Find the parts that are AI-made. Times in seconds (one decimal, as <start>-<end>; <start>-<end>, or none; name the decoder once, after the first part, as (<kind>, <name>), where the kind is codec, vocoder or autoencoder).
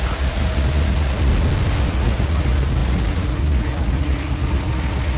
0.0-1.3 (vocoder, Vocos); 1.8-5.2